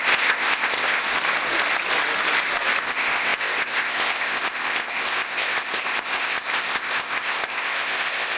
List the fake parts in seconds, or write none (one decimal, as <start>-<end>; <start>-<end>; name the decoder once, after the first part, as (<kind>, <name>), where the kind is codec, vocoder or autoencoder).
0.0-1.0 (codec, ZipCodec); 2.8-8.4